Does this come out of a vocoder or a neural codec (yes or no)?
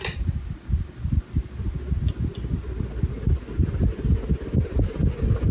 no